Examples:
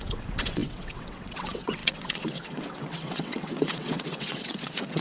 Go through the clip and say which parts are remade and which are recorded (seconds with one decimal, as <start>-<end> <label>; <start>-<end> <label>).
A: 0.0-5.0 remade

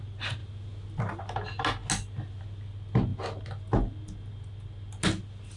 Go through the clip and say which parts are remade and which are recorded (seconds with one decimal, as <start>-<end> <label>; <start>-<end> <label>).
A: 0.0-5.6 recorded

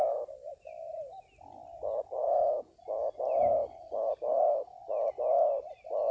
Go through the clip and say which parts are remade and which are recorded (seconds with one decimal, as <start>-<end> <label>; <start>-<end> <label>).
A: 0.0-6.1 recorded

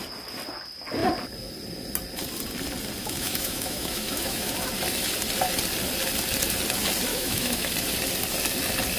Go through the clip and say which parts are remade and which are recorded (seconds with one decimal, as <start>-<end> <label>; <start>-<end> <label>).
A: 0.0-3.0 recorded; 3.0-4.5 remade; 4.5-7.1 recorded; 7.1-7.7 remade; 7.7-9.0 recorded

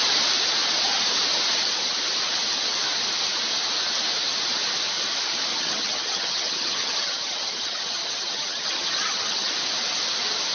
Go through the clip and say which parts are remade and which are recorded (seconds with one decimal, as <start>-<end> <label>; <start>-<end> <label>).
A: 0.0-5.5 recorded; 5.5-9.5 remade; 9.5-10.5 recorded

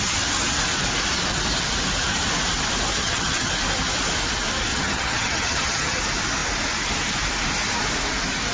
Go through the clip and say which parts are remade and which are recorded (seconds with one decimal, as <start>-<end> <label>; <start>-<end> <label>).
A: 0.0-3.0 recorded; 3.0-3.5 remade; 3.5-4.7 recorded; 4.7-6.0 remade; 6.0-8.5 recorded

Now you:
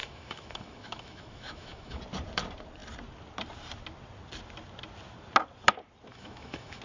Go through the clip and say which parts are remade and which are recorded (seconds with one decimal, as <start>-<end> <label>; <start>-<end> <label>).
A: 0.0-2.0 remade; 2.0-6.1 recorded; 6.1-6.8 remade